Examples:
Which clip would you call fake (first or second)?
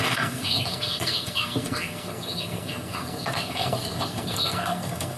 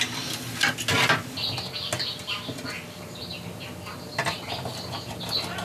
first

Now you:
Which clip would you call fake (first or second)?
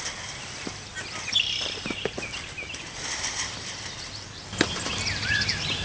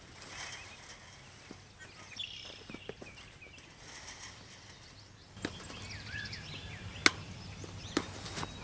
first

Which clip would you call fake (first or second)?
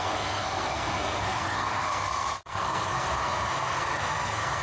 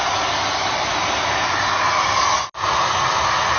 first